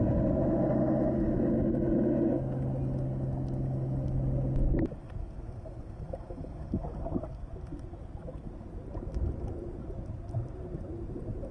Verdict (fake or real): real